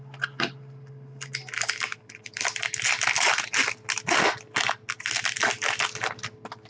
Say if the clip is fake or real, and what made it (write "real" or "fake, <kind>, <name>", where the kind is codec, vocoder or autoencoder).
real